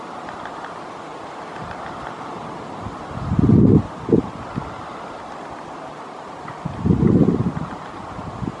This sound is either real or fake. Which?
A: real